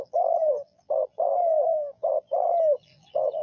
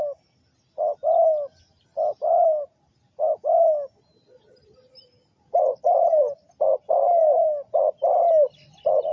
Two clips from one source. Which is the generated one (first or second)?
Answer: first